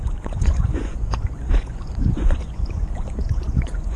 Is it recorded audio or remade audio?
remade